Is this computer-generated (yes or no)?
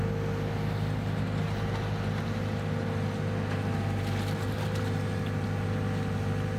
no